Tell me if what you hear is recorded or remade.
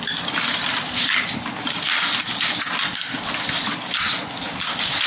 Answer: recorded